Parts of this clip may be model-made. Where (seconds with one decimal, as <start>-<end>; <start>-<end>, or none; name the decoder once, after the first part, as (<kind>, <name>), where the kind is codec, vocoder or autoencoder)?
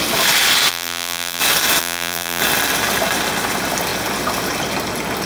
0.7-1.4 (vocoder, BigVGAN v2); 1.8-2.4